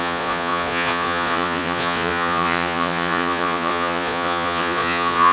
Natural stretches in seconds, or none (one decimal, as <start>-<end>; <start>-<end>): none